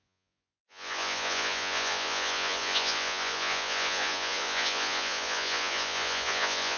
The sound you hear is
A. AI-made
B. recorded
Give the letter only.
A